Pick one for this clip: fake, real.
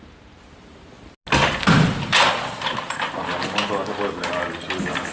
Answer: real